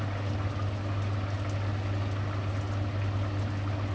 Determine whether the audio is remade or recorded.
recorded